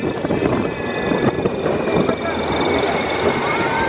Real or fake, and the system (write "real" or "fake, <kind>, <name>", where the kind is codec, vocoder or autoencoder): fake, vocoder, BigVGAN v2